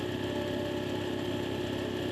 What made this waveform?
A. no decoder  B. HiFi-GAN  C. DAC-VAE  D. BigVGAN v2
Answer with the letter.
A